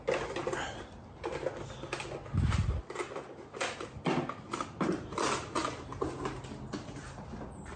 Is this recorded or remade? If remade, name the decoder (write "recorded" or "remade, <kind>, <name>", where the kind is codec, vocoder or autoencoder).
recorded